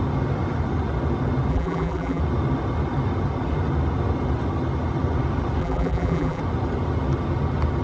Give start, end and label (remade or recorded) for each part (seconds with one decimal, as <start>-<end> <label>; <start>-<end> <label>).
0.0-1.5 recorded; 1.5-2.2 remade; 2.2-5.6 recorded; 5.6-6.4 remade; 6.4-7.8 recorded